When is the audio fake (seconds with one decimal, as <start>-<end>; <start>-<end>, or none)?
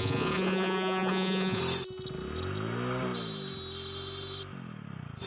0.0-1.6